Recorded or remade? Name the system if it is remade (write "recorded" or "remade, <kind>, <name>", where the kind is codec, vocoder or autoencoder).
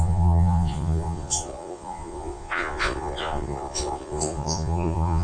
remade, vocoder, Vocos